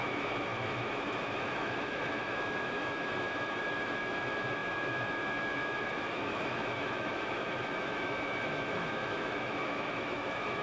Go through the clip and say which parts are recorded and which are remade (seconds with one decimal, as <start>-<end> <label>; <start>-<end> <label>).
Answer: 0.0-10.6 remade

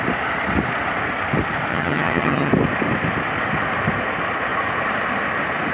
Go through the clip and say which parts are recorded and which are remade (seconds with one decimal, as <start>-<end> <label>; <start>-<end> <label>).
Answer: 0.0-1.7 recorded; 1.7-2.5 remade; 2.5-5.7 recorded

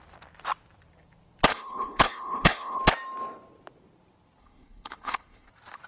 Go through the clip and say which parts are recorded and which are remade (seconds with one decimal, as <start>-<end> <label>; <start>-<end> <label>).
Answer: 0.0-1.5 recorded; 1.5-2.8 remade; 2.8-4.4 recorded; 4.4-5.5 remade; 5.5-5.9 recorded

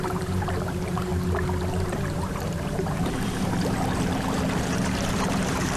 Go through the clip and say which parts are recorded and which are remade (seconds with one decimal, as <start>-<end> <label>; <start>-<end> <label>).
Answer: 0.0-1.1 remade; 1.1-1.7 recorded; 1.7-5.8 remade